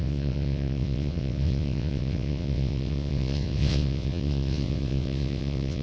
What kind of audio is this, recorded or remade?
remade